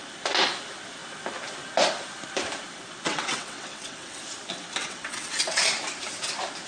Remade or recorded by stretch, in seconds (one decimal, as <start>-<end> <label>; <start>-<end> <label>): 0.0-3.1 recorded; 3.1-4.2 remade; 4.2-4.8 recorded; 4.8-5.6 remade; 5.6-6.7 recorded